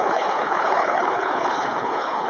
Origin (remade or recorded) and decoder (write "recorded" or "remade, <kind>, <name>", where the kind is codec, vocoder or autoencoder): remade, codec, HILCodec